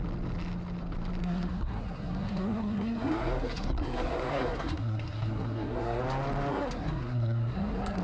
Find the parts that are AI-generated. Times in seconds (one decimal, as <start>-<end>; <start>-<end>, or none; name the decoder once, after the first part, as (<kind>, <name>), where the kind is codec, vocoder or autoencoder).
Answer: 1.2-6.0 (codec, SNAC); 6.5-8.0